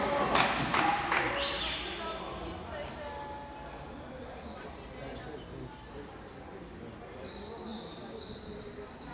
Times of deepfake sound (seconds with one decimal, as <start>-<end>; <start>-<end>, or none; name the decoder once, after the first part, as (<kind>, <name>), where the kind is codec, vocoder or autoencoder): none